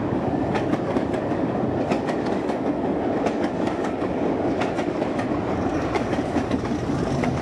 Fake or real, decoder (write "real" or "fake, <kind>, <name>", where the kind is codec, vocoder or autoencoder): fake, codec, DAC